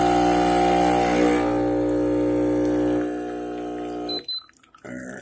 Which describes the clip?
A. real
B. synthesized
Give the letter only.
A